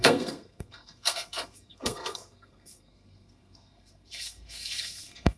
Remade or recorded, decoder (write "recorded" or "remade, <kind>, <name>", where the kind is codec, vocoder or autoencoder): remade, codec, SNAC